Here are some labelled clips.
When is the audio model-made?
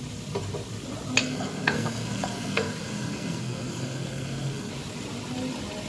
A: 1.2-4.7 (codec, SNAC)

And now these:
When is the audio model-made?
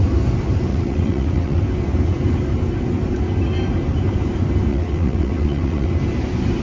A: 0.7-1.6 (vocoder, WaveNeXt); 4.7-5.9